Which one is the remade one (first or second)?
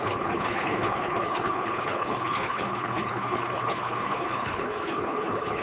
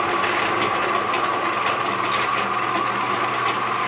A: first